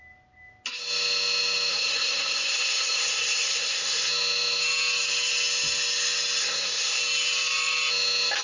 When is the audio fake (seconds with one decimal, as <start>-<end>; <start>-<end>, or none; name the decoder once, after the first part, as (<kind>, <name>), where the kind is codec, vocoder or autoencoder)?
1.7-4.1 (codec, SNAC); 6.4-7.0